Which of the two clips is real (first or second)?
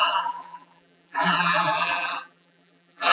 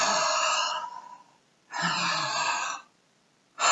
second